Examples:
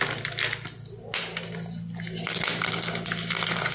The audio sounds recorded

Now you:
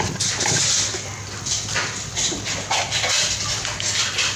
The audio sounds recorded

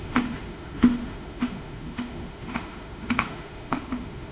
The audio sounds remade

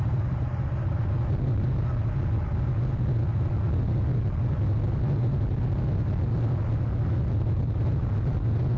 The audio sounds recorded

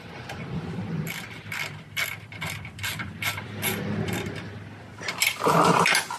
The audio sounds remade